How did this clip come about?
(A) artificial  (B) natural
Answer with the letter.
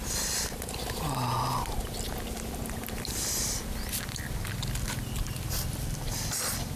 B